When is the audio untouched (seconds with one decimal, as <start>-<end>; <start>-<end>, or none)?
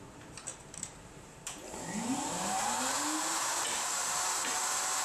none